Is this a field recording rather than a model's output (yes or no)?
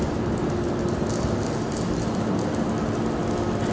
yes